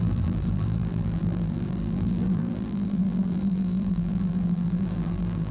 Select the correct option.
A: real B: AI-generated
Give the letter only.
B